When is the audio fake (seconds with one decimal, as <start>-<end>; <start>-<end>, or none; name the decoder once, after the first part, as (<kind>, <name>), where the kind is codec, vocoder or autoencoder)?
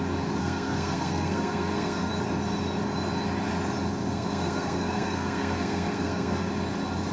0.4-2.1 (codec, SNAC); 4.1-6.5